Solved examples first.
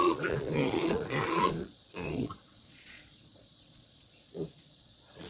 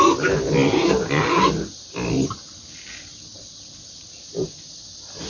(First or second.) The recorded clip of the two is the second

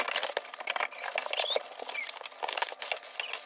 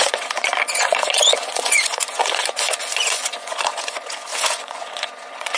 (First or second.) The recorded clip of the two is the first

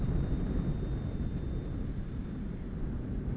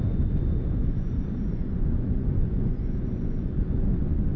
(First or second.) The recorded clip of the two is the first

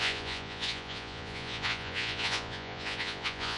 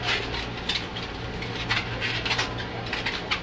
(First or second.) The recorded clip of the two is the second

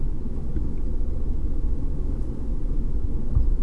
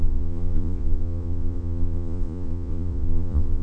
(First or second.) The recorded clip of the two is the first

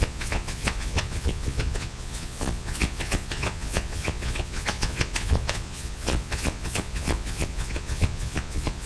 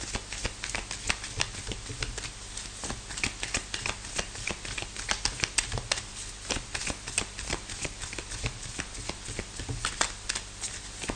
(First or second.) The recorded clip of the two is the second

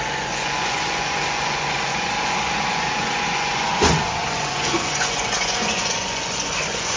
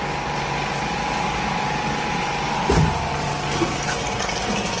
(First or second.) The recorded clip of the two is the second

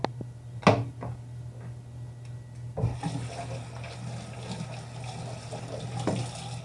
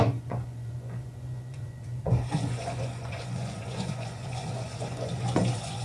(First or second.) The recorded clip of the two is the first